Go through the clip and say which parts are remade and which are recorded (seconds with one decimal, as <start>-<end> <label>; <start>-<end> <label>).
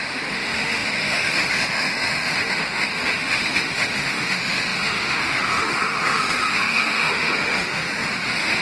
0.0-8.6 remade